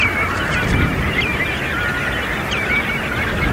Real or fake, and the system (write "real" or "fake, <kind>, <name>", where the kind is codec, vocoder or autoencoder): fake, vocoder, BigVGAN v2